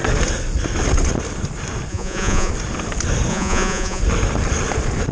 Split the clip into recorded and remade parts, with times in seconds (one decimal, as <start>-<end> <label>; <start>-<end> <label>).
0.0-1.9 recorded; 1.9-2.5 remade; 2.5-3.3 recorded; 3.3-4.0 remade; 4.0-5.1 recorded